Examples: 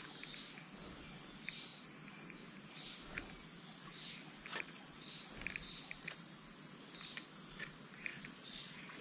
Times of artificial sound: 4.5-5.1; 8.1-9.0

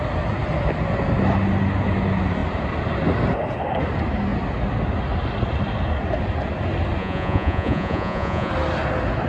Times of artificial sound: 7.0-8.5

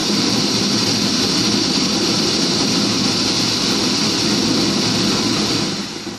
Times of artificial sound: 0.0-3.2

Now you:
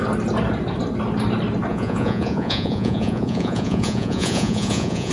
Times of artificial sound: 1.7-5.1

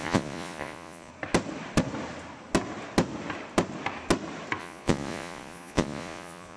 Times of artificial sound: 0.0-1.1; 4.6-6.6

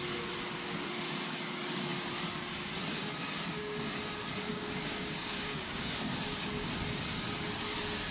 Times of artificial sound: 4.5-5.9